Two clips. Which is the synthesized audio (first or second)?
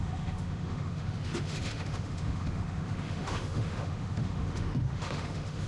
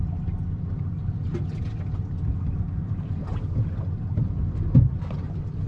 first